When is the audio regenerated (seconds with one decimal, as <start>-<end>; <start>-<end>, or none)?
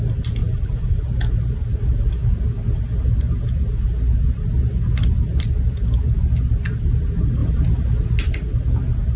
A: 0.4-1.0